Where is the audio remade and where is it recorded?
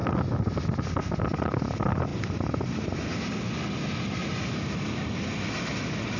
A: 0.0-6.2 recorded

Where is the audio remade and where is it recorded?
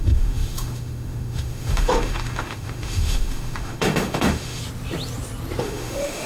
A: 0.0-4.6 remade; 4.6-5.6 recorded; 5.6-6.3 remade